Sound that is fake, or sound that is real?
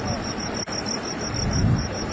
real